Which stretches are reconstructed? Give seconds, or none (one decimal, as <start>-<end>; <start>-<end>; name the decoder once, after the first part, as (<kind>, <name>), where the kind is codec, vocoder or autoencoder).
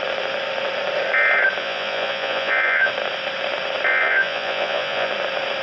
1.6-2.9 (vocoder, Vocos); 3.9-5.1